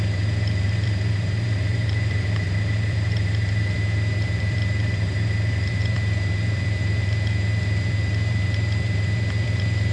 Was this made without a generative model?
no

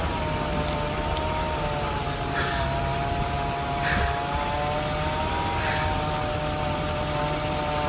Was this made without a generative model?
yes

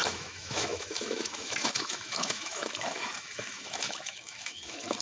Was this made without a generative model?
no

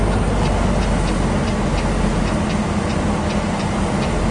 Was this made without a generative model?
yes